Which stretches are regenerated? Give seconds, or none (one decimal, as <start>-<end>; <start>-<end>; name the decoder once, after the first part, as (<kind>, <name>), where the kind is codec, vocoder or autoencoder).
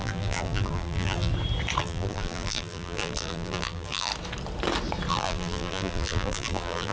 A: 0.0-1.3 (vocoder, BigVGAN v2); 1.8-4.1; 5.1-6.9